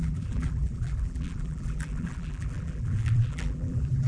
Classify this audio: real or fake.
fake